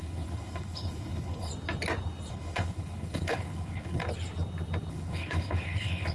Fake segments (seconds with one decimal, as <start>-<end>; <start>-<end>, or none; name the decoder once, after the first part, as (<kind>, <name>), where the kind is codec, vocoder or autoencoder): 0.0-1.5 (codec, HILCodec); 2.3-4.0; 4.9-6.1

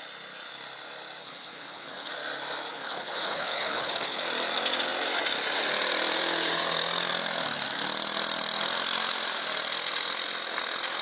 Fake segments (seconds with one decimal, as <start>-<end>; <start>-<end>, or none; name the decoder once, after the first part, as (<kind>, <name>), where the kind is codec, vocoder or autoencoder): 1.2-2.1 (codec, HILCodec); 2.7-4.2

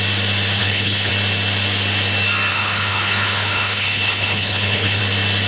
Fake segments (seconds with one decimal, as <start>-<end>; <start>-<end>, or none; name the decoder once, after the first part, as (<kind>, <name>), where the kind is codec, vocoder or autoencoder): 0.6-1.1 (codec, HILCodec); 2.5-5.0

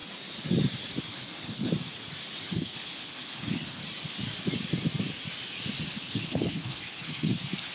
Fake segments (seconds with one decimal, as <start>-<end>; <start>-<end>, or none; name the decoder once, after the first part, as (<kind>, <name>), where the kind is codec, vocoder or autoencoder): 1.0-1.7 (codec, HILCodec); 2.4-3.8; 6.0-7.7

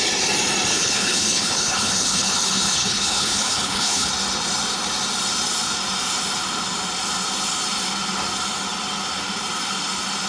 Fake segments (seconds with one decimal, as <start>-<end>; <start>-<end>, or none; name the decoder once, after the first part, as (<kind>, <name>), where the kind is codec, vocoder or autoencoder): 0.7-4.1 (codec, HILCodec)

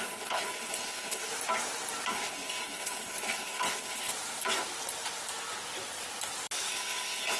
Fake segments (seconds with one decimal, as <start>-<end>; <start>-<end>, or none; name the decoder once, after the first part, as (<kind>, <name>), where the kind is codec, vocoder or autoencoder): 0.0-1.3 (codec, HILCodec); 2.1-4.1; 6.7-7.4